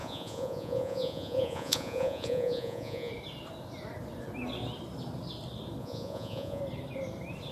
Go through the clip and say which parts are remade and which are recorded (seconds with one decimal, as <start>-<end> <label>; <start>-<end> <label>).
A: 0.0-3.1 remade; 3.1-5.8 recorded; 5.8-6.6 remade; 6.6-7.5 recorded